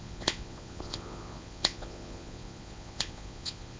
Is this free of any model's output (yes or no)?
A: no